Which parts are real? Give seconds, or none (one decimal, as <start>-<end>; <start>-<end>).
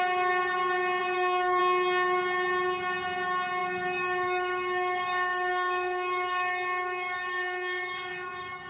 0.0-1.0; 1.6-3.6